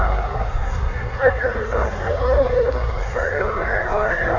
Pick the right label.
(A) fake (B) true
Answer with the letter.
A